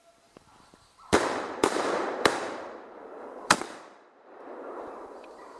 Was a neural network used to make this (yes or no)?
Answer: yes